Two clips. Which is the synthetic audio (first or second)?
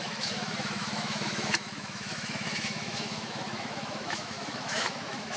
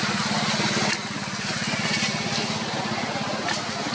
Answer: first